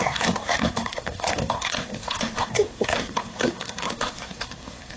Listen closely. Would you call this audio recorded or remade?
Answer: remade